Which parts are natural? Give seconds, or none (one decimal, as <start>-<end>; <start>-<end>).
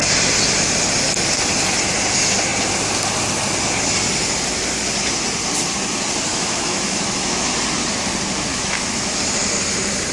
0.0-6.3; 7.5-8.5; 9.2-10.1